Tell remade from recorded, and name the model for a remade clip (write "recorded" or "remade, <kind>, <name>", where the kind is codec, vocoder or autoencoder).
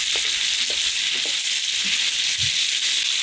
recorded